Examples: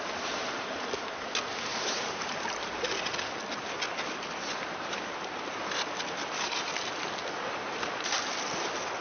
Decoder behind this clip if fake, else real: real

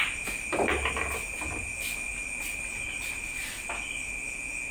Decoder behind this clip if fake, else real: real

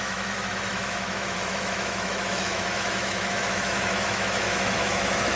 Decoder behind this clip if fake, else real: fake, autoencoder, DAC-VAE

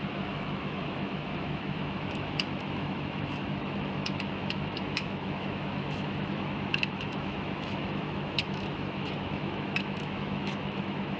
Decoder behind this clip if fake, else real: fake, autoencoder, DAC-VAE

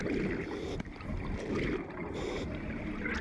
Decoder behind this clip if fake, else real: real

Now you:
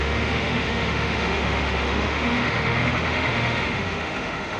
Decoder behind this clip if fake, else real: fake, autoencoder, DAC-VAE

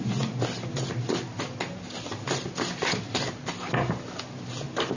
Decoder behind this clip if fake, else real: real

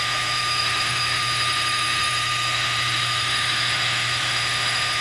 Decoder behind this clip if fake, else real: fake, autoencoder, DAC-VAE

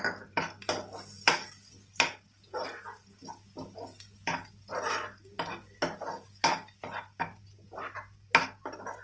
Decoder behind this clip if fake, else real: real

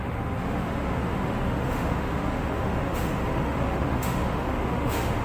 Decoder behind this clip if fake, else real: fake, autoencoder, DAC-VAE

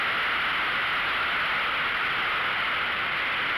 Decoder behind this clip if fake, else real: real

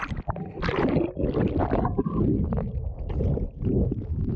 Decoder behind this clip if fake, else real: real